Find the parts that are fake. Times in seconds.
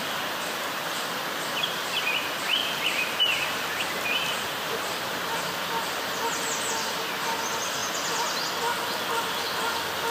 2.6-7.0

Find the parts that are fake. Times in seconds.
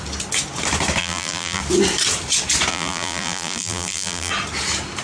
1.0-1.6; 2.7-4.3